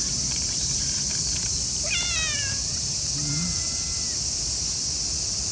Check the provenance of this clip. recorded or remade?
recorded